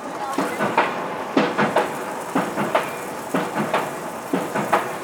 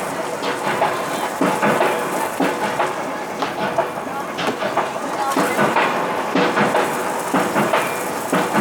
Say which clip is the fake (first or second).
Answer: first